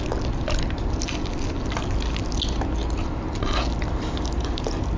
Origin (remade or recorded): recorded